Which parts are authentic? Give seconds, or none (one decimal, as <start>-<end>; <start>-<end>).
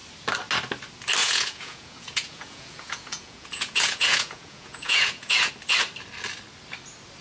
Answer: 0.0-1.2; 5.5-7.2